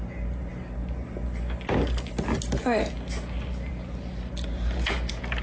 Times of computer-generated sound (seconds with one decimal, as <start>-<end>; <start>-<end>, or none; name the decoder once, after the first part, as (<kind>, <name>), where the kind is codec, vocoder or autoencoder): none